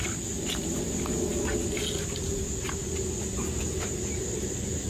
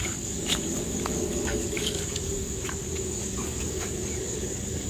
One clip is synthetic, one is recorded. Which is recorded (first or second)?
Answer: first